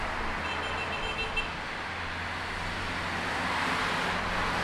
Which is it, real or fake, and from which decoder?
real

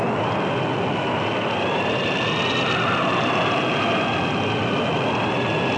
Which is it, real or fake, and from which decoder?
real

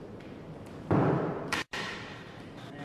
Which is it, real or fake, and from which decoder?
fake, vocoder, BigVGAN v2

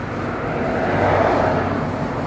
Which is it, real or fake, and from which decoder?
real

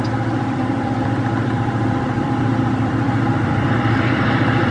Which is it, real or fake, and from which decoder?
fake, vocoder, BigVGAN v2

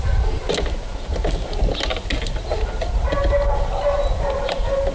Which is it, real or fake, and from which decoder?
real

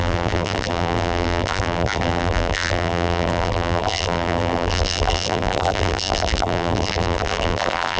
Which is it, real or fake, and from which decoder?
fake, vocoder, BigVGAN v2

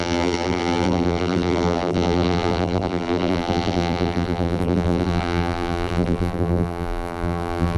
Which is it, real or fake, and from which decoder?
fake, vocoder, BigVGAN v2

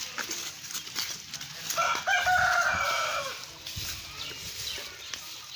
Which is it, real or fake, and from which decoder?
real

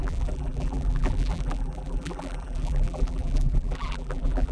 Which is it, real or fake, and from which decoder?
fake, vocoder, BigVGAN v2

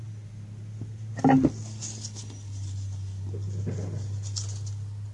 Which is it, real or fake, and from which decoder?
real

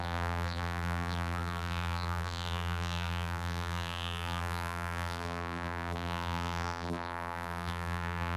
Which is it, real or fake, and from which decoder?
fake, vocoder, BigVGAN v2